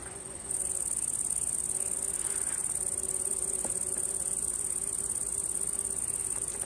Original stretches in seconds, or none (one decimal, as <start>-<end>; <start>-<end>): 0.7-6.7